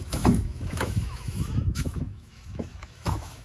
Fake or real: fake